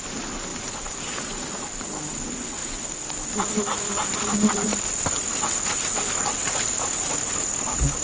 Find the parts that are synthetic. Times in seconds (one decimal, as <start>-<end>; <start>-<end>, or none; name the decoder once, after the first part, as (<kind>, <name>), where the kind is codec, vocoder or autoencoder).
none

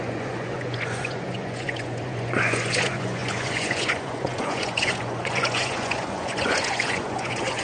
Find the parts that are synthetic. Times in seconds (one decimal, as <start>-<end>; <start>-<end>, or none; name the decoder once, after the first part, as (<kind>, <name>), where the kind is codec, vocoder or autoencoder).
0.0-7.6 (vocoder, Vocos)

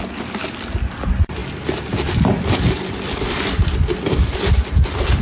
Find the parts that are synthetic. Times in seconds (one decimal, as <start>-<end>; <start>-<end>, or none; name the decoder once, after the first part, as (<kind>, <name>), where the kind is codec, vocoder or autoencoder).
1.4-4.5 (vocoder, BigVGAN v2)

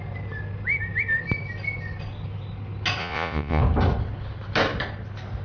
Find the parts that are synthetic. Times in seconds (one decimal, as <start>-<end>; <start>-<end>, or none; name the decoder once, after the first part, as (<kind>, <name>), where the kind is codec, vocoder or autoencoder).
3.0-3.6 (vocoder, Vocos)

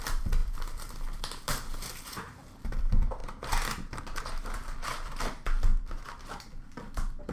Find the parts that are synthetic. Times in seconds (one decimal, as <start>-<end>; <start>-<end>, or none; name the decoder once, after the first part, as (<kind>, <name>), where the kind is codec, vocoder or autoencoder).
0.0-3.2 (vocoder, BigVGAN v2); 4.0-5.7; 6.5-7.3

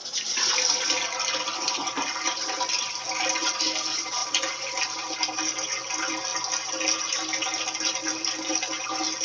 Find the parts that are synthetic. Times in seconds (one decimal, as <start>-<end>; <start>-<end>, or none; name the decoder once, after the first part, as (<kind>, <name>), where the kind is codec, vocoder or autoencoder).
4.2-4.8 (vocoder, BigVGAN v2)

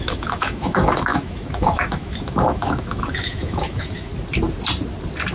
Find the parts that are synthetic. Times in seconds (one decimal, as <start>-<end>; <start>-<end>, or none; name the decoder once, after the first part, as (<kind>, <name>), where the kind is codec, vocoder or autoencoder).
0.0-4.1 (autoencoder, DAC-VAE)

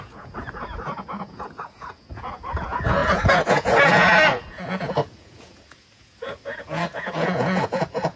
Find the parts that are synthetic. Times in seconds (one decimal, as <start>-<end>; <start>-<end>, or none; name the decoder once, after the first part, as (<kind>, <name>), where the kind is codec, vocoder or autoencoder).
0.0-8.2 (vocoder, Vocos)